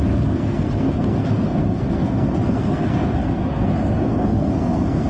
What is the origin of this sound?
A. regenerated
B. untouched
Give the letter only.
A